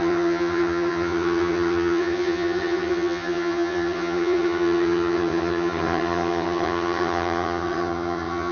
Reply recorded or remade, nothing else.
remade